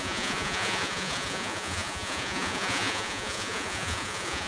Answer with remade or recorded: remade